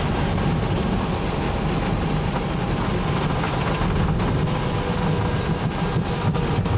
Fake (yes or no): no